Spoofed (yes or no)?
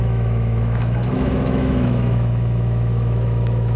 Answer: yes